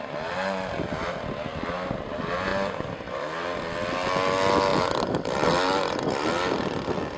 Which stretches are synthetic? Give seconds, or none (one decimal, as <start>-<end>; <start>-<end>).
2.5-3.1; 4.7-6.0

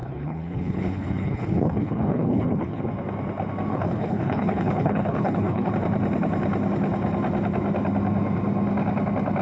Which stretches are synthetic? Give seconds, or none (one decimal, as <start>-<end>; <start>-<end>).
0.0-2.8; 3.7-5.7

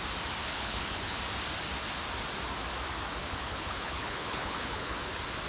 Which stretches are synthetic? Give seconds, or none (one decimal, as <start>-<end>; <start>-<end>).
0.4-1.2; 3.2-5.1